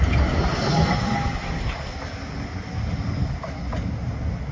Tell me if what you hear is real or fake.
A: real